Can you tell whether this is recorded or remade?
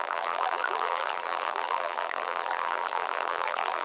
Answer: remade